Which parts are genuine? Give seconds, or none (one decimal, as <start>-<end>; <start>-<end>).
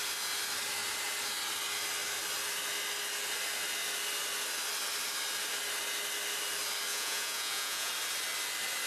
0.0-6.9; 7.9-8.9